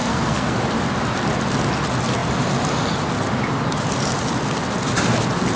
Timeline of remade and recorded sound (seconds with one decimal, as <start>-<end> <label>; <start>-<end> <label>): 0.0-0.6 remade; 0.6-5.6 recorded